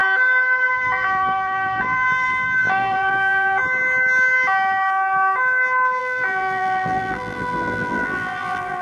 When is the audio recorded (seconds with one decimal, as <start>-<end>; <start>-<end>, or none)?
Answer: 0.0-0.7; 3.6-6.0